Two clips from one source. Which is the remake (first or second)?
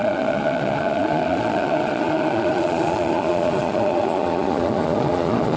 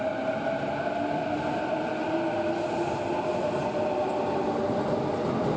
first